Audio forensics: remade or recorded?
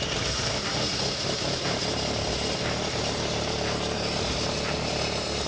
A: remade